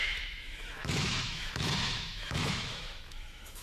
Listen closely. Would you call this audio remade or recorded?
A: remade